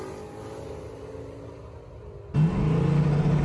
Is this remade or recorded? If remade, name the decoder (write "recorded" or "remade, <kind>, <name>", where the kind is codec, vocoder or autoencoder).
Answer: recorded